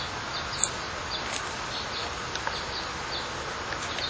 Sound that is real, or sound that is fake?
real